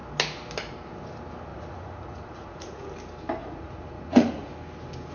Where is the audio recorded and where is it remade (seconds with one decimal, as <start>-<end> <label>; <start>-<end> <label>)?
0.0-1.5 recorded; 1.5-2.9 remade; 2.9-3.4 recorded; 3.4-4.5 remade; 4.5-5.1 recorded